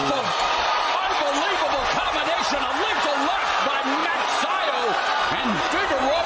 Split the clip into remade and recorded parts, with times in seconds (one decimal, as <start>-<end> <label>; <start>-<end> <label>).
0.0-6.3 recorded